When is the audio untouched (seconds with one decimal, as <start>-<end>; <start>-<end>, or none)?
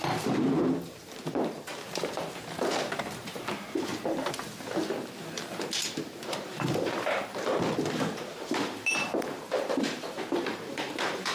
3.9-5.2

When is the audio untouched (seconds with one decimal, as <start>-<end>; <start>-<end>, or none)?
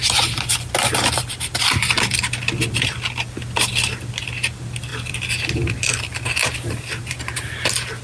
0.0-6.4; 7.5-8.0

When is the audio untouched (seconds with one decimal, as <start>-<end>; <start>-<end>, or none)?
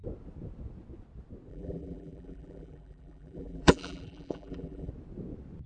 0.0-1.5; 4.9-5.7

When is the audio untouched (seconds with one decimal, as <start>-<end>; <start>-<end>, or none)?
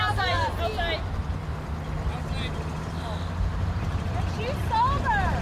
0.0-3.5; 4.6-5.4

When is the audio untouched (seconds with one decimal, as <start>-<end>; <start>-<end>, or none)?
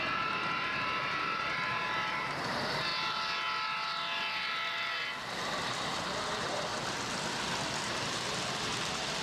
2.9-5.2; 6.7-7.7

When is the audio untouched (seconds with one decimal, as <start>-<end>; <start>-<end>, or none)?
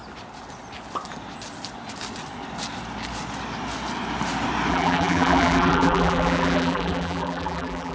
0.0-4.7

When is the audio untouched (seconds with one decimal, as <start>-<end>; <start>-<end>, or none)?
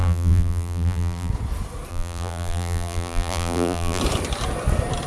1.3-1.9; 4.0-5.1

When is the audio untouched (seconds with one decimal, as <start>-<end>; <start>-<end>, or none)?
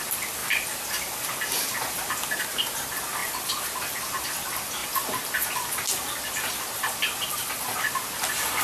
0.0-0.4; 2.4-3.2; 3.9-8.6